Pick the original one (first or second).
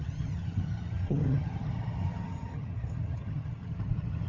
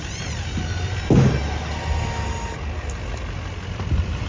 second